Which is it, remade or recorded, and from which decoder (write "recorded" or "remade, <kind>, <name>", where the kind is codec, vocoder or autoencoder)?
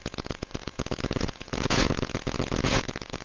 remade, vocoder, Vocos